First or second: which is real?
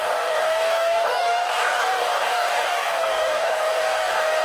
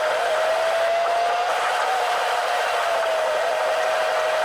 second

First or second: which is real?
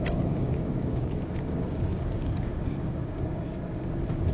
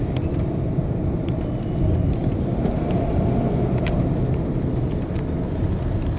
second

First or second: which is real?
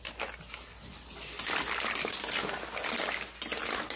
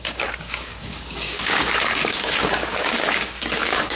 first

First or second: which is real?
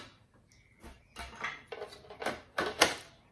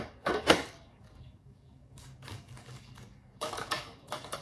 first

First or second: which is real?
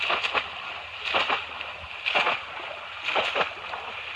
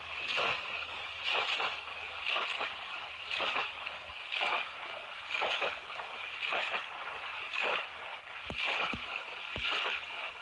first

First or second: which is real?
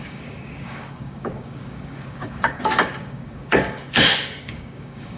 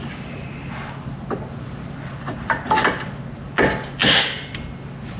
second